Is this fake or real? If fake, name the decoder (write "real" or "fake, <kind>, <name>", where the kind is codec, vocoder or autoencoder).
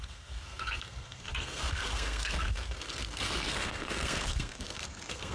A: fake, codec, SNAC